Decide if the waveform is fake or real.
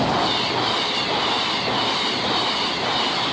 real